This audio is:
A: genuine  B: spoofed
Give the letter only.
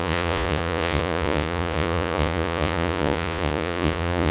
B